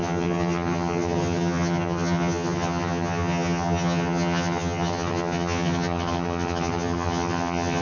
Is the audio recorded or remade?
remade